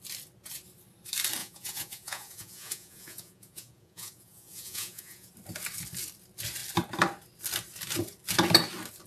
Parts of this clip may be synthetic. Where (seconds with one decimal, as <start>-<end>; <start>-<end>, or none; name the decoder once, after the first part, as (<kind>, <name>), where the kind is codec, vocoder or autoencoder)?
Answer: 1.4-5.3 (vocoder, Vocos)